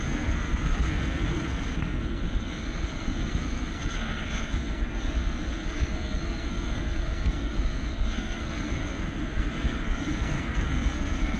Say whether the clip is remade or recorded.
remade